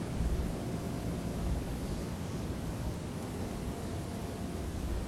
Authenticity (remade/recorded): remade